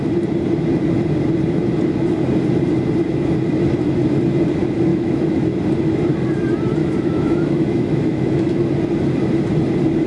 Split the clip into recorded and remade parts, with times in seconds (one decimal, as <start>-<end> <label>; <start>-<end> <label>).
0.0-4.9 recorded; 4.9-5.6 remade; 5.6-6.8 recorded; 6.8-8.6 remade; 8.6-10.1 recorded